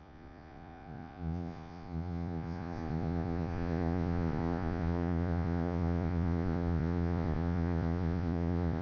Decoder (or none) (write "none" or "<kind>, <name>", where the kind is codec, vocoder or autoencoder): vocoder, Vocos